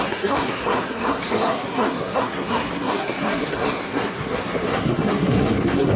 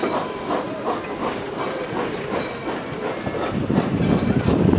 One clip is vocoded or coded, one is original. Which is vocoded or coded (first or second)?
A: first